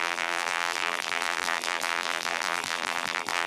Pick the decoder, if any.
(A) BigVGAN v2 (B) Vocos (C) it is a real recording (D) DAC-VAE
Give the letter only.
A